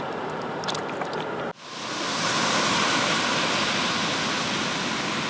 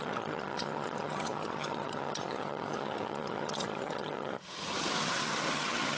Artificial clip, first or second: second